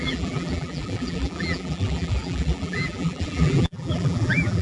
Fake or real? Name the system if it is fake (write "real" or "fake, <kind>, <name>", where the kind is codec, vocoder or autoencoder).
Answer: fake, vocoder, BigVGAN v2